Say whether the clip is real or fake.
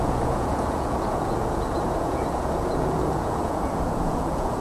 fake